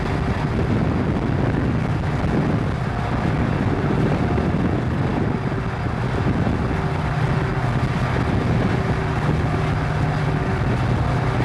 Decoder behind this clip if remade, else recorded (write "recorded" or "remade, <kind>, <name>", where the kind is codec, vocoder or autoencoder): recorded